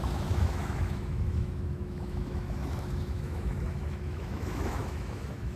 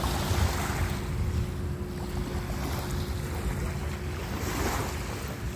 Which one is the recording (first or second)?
second